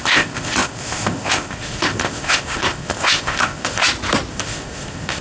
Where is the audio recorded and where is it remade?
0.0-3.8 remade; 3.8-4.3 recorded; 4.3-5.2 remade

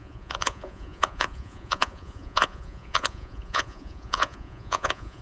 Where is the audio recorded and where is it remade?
0.0-5.2 remade

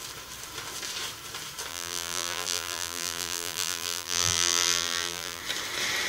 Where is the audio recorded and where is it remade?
0.0-1.7 recorded; 1.7-5.4 remade; 5.4-6.1 recorded

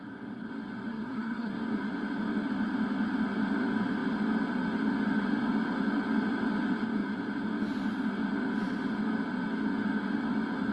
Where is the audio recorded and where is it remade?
0.0-0.9 recorded; 0.9-1.6 remade; 1.6-10.7 recorded

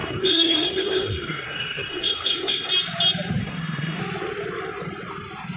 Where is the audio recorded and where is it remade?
0.0-2.7 remade; 2.7-3.4 recorded; 3.4-4.0 remade; 4.0-5.6 recorded